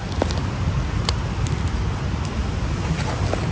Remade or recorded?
recorded